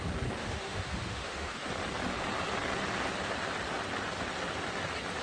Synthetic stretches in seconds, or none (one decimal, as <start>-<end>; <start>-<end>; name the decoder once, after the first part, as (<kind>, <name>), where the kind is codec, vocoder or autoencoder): 0.4-1.7 (autoencoder, DAC-VAE)